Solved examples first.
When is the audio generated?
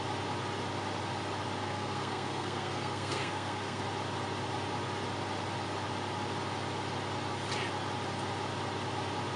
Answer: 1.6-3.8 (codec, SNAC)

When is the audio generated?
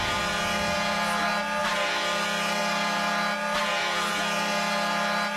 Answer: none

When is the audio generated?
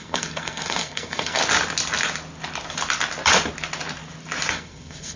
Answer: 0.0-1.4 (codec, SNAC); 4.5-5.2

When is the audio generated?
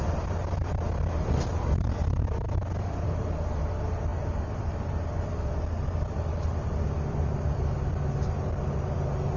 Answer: none